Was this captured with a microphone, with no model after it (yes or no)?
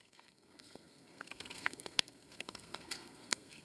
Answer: no